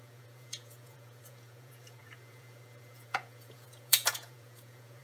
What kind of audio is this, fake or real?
fake